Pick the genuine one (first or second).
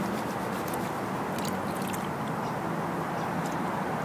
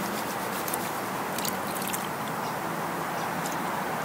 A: first